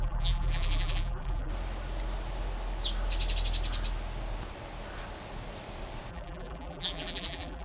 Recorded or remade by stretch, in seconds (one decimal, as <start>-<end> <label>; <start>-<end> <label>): 0.0-1.5 remade; 1.5-6.1 recorded; 6.1-7.6 remade